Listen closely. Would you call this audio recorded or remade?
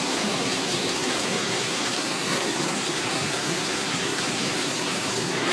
remade